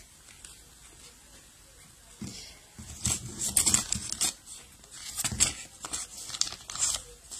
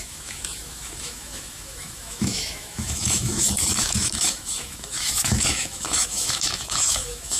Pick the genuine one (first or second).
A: first